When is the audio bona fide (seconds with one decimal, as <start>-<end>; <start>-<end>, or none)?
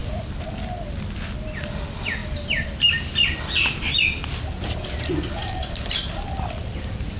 0.0-1.6